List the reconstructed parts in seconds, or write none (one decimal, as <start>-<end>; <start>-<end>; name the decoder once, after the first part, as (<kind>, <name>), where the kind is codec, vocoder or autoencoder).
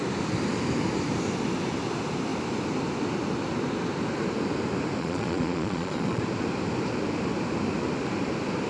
5.0-6.2 (vocoder, Vocos)